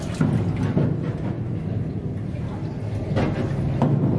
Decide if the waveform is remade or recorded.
recorded